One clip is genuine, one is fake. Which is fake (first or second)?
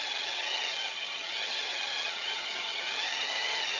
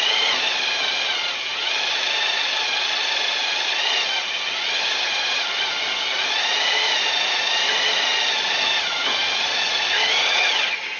first